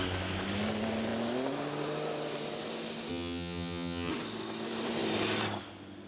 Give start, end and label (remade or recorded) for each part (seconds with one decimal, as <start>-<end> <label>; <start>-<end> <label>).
0.0-3.1 recorded; 3.1-4.1 remade; 4.1-6.1 recorded